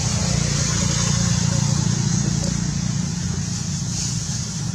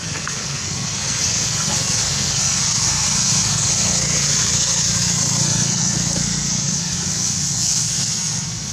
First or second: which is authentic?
first